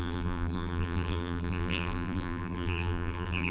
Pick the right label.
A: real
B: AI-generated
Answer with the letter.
B